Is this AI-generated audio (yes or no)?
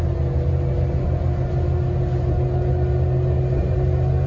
no